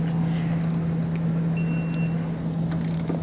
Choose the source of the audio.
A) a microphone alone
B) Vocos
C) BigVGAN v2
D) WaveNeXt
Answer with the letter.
A